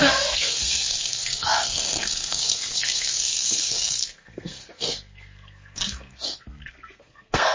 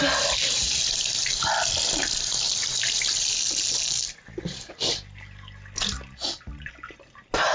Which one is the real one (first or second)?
second